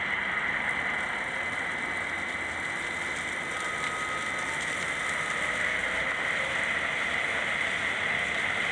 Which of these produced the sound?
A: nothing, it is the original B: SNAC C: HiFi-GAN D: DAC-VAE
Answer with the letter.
A